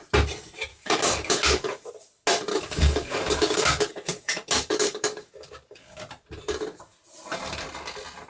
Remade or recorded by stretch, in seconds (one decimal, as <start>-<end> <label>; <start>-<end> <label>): 0.0-0.7 recorded; 0.7-1.9 remade; 1.9-2.5 recorded; 2.5-6.0 remade; 6.0-8.3 recorded